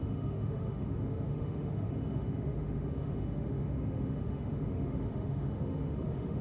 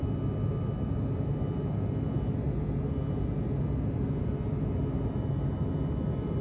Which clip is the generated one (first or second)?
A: first